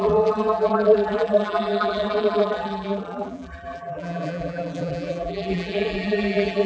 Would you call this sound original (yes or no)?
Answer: no